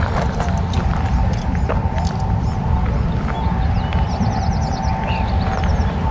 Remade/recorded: recorded